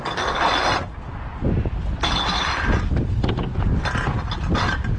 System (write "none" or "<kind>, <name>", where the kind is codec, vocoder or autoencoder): none